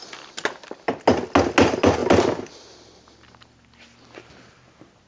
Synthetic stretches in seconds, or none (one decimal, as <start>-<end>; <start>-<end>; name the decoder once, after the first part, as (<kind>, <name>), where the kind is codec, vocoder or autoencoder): none